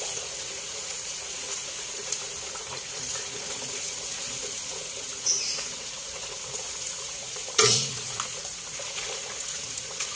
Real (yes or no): no